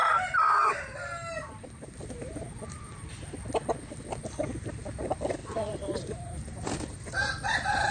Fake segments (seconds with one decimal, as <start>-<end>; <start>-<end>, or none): 5.4-6.7